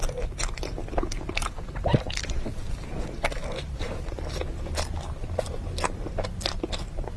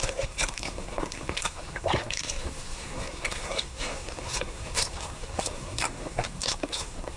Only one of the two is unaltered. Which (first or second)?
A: first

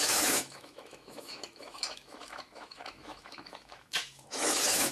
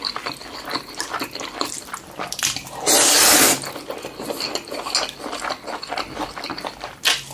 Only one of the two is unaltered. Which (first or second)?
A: second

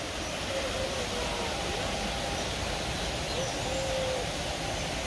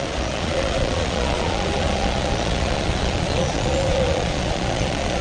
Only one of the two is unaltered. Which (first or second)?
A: first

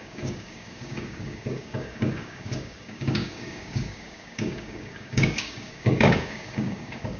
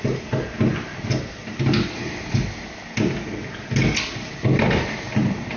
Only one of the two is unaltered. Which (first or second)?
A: second